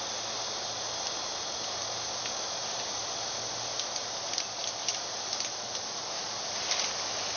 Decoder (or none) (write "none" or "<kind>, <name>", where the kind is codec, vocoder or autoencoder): none